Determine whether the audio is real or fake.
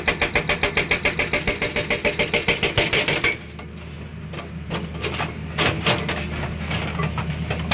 real